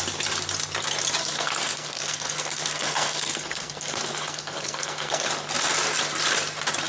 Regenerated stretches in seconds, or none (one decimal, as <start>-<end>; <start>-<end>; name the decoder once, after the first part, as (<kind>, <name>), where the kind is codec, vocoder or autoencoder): 1.2-5.3 (codec, SNAC)